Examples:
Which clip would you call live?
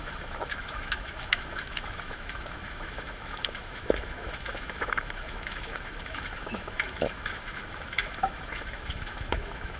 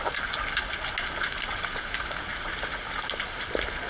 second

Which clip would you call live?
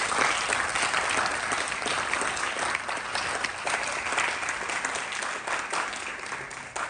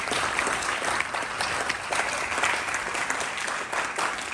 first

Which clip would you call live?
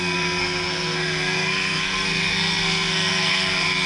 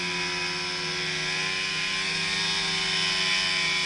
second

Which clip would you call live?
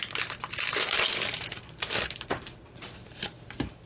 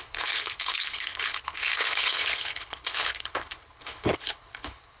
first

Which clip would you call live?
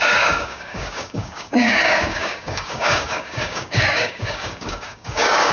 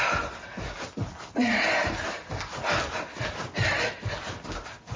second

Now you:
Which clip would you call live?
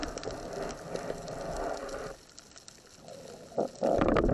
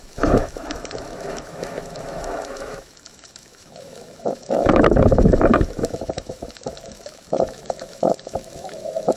first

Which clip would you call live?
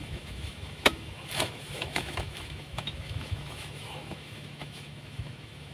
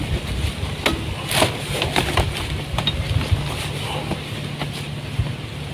second